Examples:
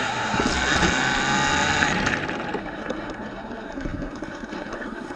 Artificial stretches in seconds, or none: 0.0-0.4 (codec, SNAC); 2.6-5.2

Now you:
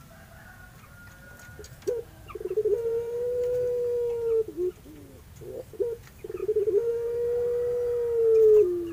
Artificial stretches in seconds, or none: 2.8-3.4 (vocoder, BigVGAN v2); 6.4-6.9

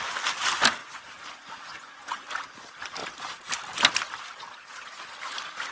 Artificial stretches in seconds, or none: 0.8-2.3 (vocoder, Vocos)

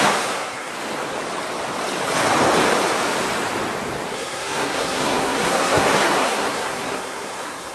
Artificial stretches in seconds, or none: 0.0-0.7 (codec, SNAC); 4.1-7.7

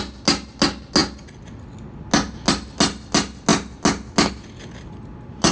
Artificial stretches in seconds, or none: none

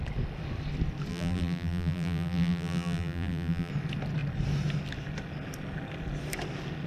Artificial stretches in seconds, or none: 1.1-3.7 (vocoder, BigVGAN v2)